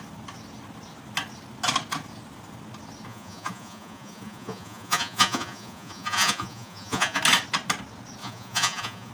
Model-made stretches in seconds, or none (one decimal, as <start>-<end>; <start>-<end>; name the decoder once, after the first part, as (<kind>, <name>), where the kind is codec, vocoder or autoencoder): 3.1-7.2 (vocoder, Vocos); 8.2-9.1